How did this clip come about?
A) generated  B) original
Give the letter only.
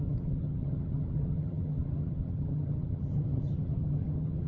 A